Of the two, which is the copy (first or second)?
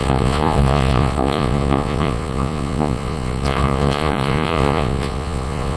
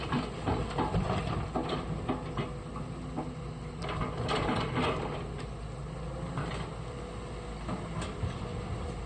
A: first